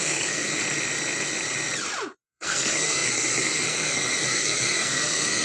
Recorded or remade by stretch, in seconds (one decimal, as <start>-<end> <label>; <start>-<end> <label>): 0.0-0.6 remade; 0.6-2.2 recorded; 2.2-5.4 remade